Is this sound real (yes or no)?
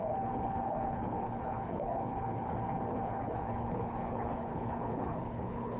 no